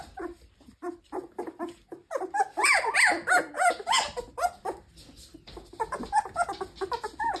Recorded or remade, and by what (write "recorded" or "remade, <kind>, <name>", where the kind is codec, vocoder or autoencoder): recorded